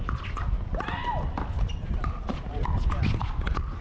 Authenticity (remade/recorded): recorded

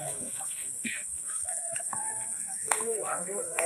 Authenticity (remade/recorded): remade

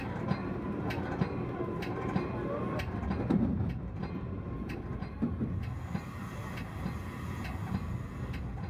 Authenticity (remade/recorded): recorded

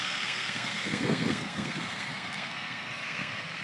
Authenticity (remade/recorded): remade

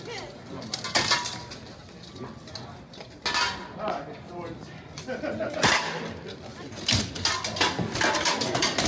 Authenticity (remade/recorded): recorded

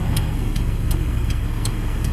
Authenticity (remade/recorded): remade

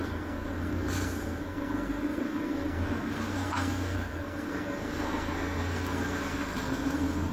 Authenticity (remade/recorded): remade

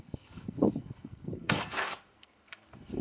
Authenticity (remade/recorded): remade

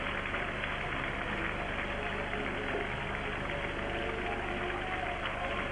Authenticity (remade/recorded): recorded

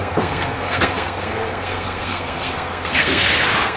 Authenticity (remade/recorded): remade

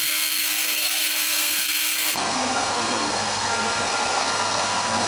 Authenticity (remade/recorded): remade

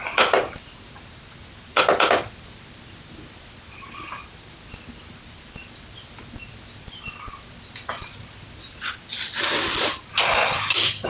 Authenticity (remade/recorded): recorded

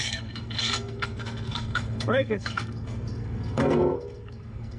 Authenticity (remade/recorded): remade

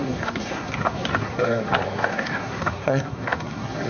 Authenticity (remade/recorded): remade